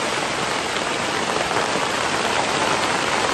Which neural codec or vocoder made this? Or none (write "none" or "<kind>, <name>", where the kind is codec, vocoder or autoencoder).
vocoder, BigVGAN v2